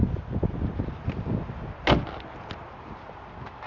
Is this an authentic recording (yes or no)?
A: yes